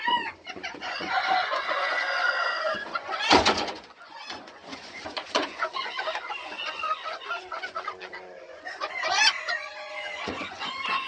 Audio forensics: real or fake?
fake